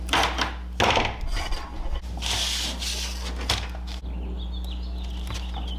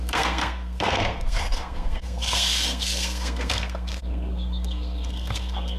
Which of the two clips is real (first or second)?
first